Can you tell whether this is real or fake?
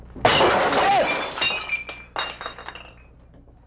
real